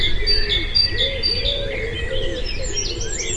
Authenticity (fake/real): real